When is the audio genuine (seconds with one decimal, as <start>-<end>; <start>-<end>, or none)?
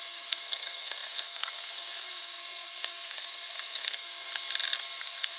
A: 4.3-5.0